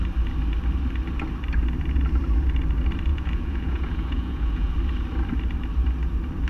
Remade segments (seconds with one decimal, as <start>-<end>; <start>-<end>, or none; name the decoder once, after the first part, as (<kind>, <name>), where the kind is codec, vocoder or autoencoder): 3.1-4.7 (vocoder, Vocos)